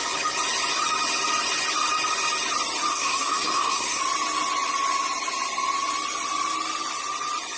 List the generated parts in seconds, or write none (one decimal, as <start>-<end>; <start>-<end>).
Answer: 2.9-4.0